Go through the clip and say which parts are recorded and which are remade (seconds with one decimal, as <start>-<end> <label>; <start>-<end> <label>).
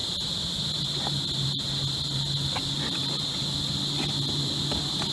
0.0-5.1 recorded